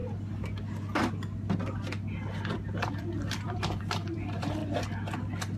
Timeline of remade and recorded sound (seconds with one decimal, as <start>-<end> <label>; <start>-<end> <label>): 0.0-2.9 recorded; 2.9-4.6 remade; 4.6-5.6 recorded